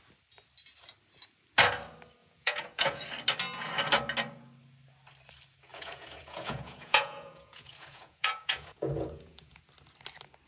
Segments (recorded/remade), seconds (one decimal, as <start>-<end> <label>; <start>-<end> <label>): 0.0-2.2 recorded; 2.2-3.0 remade; 3.0-5.7 recorded; 5.7-9.6 remade; 9.6-10.5 recorded